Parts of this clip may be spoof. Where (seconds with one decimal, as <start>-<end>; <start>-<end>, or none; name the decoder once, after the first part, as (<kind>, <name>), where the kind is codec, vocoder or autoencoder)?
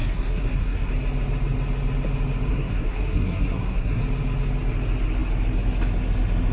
0.0-0.9 (codec, SNAC); 2.5-4.0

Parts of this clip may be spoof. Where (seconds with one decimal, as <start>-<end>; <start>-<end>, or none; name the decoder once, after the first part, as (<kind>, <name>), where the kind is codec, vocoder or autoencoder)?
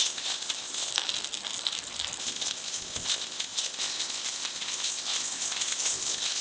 0.0-0.9 (codec, ZipCodec); 2.2-6.4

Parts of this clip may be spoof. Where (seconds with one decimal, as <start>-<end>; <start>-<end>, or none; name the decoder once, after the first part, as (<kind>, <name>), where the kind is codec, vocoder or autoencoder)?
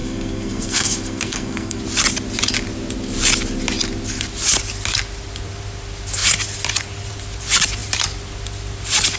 0.0-1.8 (codec, SNAC)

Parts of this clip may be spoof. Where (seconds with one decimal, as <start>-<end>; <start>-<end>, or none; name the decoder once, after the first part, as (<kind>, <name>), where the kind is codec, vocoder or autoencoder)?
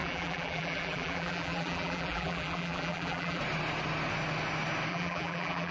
0.0-3.4 (vocoder, BigVGAN v2); 4.9-5.7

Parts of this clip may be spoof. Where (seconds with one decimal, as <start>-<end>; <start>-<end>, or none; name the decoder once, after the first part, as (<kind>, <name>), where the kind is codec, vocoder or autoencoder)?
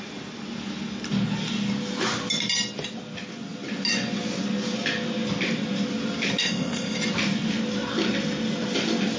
6.4-7.0 (codec, ZipCodec)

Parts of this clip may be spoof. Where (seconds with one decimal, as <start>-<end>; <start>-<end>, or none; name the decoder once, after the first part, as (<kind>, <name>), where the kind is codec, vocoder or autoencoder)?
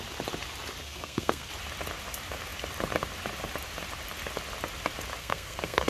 0.8-1.5 (codec, SNAC); 5.2-5.9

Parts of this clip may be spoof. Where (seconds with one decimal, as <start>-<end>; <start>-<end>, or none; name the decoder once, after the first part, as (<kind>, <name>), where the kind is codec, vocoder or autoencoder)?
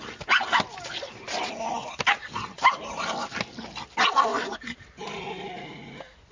1.8-3.4 (vocoder, BigVGAN v2); 4.3-5.2